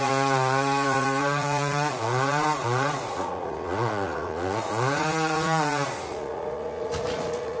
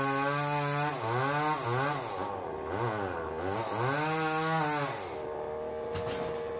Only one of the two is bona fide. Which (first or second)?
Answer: second